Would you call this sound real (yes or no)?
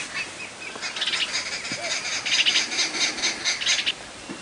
yes